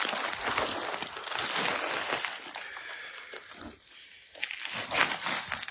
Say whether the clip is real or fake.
real